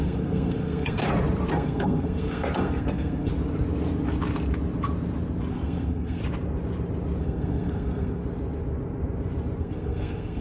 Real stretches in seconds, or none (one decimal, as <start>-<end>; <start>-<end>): 1.0-1.5; 3.3-5.5; 6.2-7.2; 8.2-9.6